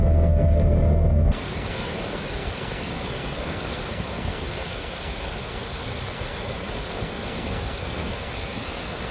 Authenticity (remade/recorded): remade